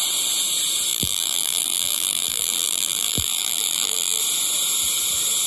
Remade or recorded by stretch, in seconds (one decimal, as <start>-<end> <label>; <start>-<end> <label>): 0.0-0.9 recorded; 0.9-4.2 remade; 4.2-5.5 recorded